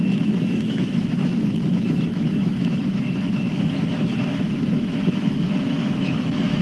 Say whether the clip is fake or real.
fake